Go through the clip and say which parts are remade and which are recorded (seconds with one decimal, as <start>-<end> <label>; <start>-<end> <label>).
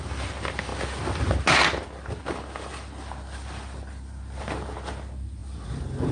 0.0-6.1 recorded